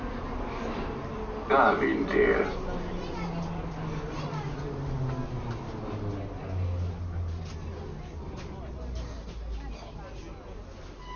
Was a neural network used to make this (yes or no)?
no